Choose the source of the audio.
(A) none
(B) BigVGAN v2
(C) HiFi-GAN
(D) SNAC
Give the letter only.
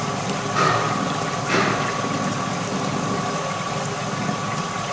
A